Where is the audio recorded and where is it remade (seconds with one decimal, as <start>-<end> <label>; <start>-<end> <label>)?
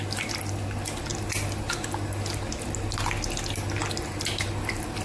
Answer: 0.0-5.0 recorded